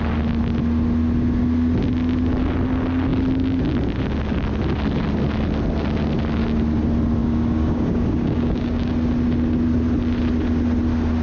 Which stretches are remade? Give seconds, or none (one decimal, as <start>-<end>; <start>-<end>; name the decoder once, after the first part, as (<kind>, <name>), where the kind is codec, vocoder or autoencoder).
7.2-8.9 (codec, DAC)